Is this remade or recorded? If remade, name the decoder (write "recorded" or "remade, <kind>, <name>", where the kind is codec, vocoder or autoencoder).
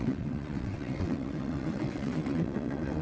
remade, vocoder, WaveNeXt